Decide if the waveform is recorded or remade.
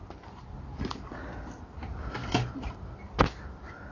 recorded